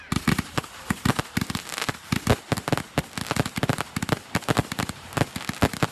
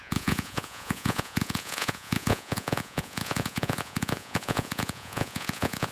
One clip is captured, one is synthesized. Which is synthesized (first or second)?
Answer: second